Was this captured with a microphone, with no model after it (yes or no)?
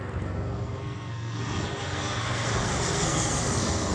no